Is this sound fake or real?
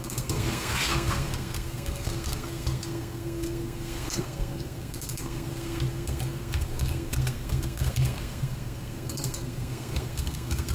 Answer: fake